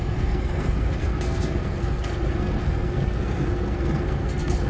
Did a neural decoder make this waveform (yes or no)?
yes